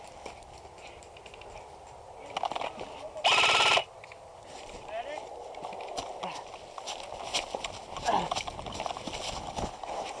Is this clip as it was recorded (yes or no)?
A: yes